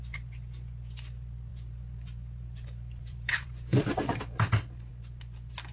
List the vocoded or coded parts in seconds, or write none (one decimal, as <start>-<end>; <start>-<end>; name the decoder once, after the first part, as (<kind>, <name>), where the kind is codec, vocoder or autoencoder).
1.5-4.9 (vocoder, BigVGAN v2)